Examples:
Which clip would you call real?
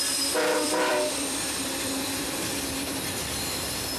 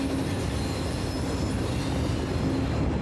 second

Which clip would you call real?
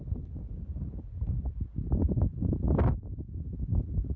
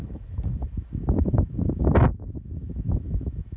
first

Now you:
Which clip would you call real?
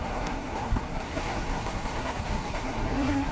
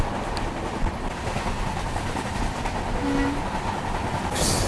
second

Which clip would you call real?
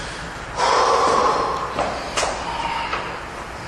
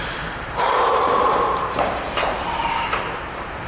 first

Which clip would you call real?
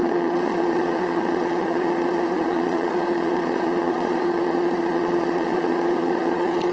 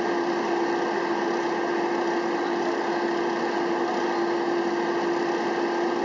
second